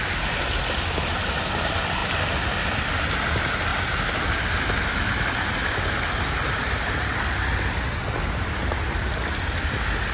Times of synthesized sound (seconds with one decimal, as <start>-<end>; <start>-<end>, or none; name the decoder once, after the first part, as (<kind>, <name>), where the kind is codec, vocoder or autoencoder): none